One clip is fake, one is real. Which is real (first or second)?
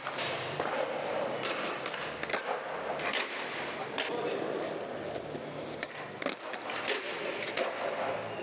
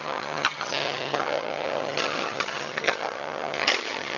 first